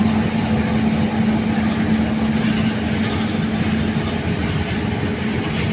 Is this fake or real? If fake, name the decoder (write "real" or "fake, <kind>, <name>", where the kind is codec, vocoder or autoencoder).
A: real